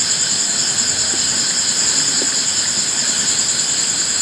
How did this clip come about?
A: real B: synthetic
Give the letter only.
A